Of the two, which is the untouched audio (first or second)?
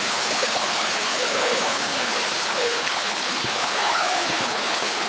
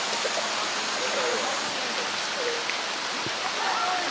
second